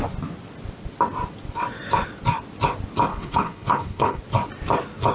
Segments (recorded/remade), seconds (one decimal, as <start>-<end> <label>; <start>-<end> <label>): 0.0-3.1 recorded; 3.1-4.2 remade; 4.2-5.1 recorded